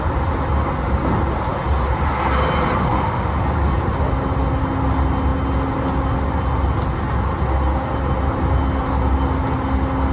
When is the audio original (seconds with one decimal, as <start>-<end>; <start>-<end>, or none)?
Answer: 0.0-2.8; 3.4-10.1